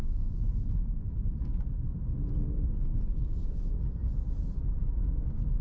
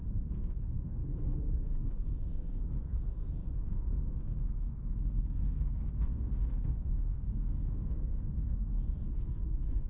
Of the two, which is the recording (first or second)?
first